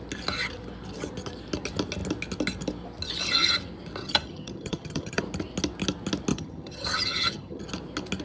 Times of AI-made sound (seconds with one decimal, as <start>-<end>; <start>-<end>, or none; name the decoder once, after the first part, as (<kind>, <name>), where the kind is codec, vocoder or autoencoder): 4.0-5.2 (vocoder, HiFi-GAN); 6.3-7.7